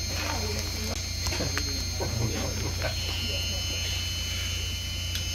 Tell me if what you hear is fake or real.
real